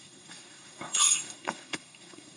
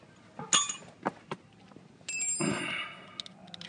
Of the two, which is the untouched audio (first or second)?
second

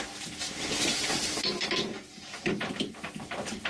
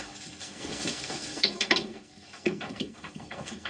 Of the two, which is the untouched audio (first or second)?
first